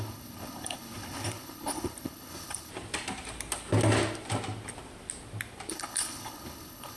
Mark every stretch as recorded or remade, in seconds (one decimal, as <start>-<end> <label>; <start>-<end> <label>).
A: 0.0-2.7 remade; 2.7-5.7 recorded; 5.7-7.0 remade